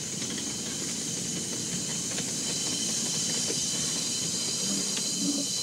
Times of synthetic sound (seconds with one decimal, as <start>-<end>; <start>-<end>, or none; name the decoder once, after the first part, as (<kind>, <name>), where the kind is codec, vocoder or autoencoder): none